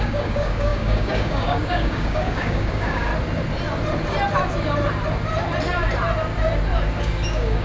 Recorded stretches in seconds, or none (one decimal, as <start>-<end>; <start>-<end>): 3.1-7.0